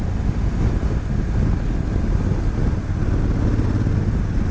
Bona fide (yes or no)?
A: yes